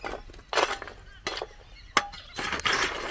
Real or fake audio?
real